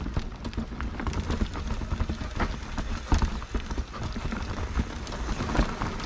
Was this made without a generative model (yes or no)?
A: yes